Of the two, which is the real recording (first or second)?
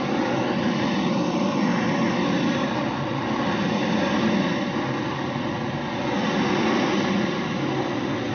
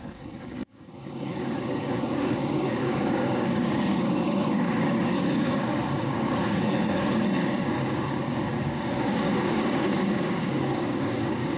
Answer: first